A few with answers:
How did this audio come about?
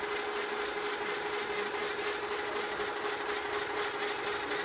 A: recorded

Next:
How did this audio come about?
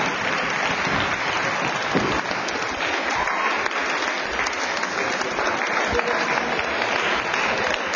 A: recorded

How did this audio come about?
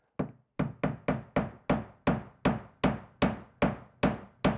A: recorded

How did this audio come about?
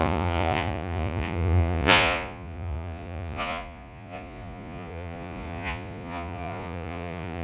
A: remade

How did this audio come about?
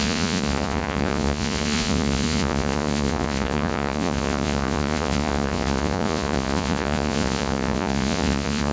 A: remade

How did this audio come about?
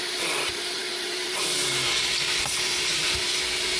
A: remade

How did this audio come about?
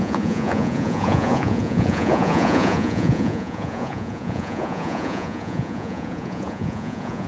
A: remade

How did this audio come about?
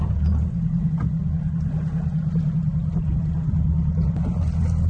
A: recorded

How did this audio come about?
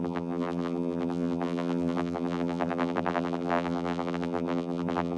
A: remade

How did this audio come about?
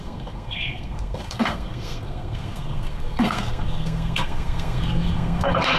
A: remade